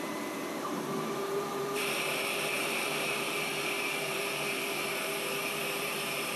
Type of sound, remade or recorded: remade